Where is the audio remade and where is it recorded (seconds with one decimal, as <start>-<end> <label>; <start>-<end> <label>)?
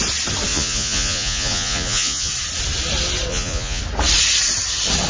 0.0-0.5 recorded; 0.5-2.3 remade; 2.3-3.3 recorded; 3.3-3.8 remade; 3.8-5.1 recorded